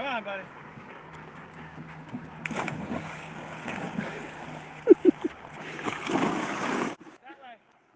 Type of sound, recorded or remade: remade